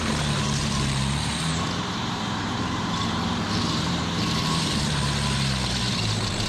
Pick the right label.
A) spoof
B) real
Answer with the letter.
A